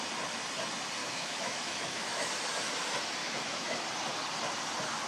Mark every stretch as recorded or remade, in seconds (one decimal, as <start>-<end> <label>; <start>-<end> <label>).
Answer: 0.0-1.0 recorded; 1.0-2.3 remade; 2.3-3.2 recorded; 3.2-3.8 remade; 3.8-5.1 recorded